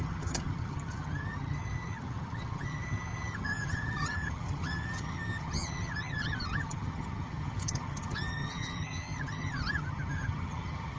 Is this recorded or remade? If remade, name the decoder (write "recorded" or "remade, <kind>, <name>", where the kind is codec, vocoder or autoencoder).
remade, vocoder, HiFi-GAN